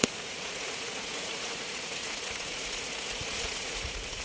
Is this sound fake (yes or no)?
yes